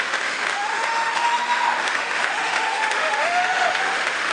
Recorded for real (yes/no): no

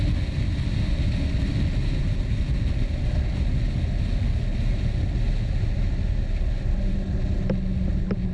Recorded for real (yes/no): yes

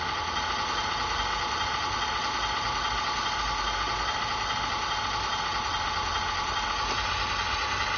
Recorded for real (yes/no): yes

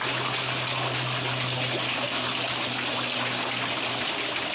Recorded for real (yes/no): yes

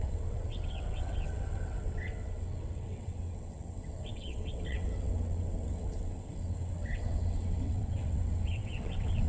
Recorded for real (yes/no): no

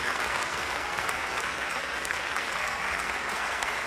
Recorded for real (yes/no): no